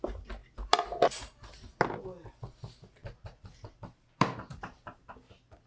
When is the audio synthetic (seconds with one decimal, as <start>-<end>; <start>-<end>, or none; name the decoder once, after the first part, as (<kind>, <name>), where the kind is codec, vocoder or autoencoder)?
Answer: none